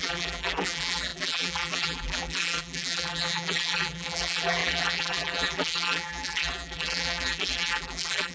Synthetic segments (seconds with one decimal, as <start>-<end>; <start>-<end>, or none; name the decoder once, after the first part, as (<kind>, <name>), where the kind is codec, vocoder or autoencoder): 0.0-8.3 (vocoder, BigVGAN v2)